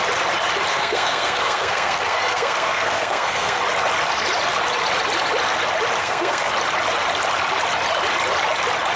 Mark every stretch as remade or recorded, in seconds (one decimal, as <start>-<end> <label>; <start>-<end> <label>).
0.0-0.7 recorded; 0.7-3.6 remade; 3.6-6.0 recorded; 6.0-6.5 remade; 6.5-9.0 recorded